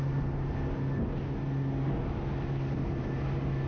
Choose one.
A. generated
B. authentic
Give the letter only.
B